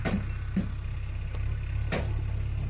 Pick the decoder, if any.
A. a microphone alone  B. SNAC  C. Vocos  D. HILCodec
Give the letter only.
A